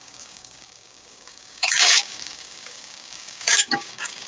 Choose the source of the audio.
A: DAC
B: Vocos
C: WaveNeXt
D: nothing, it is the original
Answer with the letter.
A